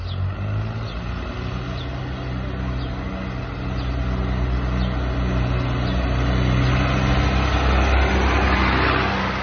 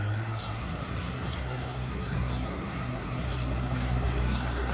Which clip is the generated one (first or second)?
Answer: second